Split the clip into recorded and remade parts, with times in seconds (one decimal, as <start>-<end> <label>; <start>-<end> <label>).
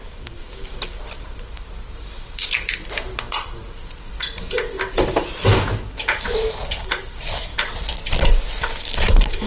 0.0-0.7 remade; 0.7-9.5 recorded